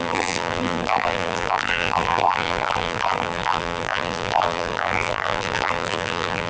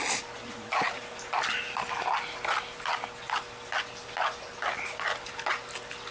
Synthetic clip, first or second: first